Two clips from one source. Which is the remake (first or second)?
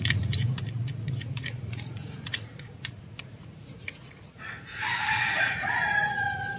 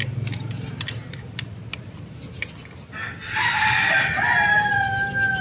first